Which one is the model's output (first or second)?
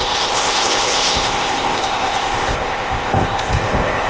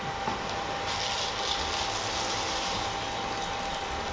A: first